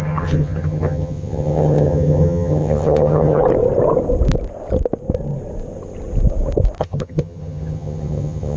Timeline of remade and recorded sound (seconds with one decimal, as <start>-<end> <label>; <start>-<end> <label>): 0.0-3.4 remade; 3.4-6.8 recorded; 6.8-8.6 remade